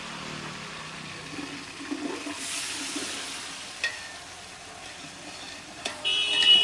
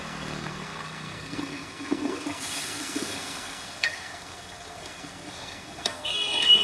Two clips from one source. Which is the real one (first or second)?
first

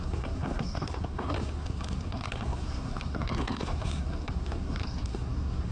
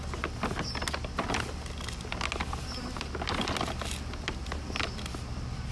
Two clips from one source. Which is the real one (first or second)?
second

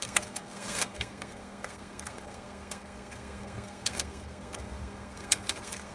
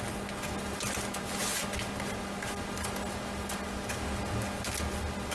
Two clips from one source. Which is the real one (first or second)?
second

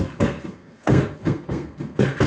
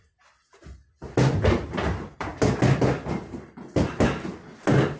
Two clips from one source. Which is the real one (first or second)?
second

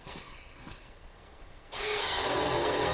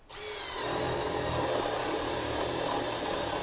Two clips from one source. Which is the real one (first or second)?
second